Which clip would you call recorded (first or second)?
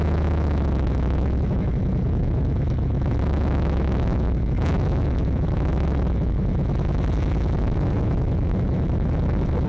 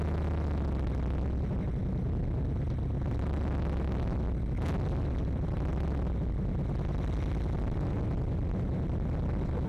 second